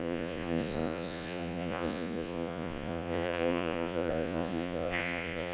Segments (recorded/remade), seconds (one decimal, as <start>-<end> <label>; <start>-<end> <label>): 0.0-5.5 remade